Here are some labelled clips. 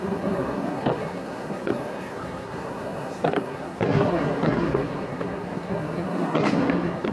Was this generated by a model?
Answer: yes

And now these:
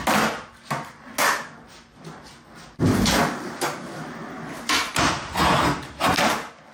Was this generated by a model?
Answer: no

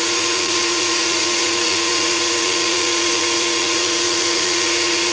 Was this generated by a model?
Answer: yes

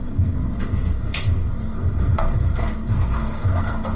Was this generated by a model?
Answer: yes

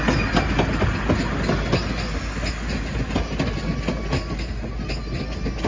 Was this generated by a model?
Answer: no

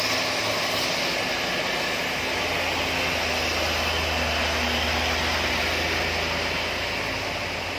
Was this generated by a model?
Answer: no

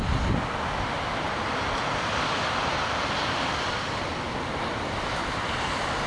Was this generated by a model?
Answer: no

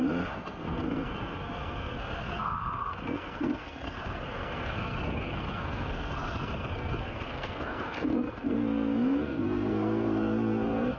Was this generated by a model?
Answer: yes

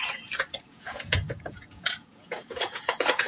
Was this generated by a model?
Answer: yes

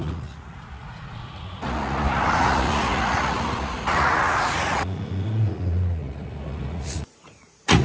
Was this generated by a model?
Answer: yes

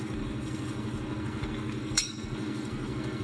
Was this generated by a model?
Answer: yes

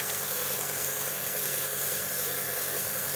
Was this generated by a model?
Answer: yes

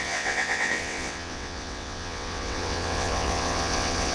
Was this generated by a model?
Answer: yes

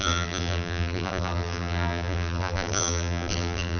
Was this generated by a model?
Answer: yes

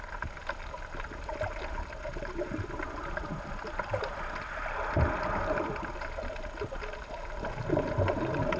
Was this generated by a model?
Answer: no